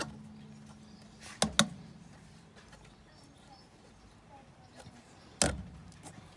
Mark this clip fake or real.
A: real